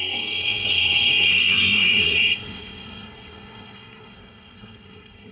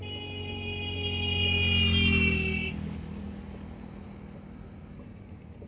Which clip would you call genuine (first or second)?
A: second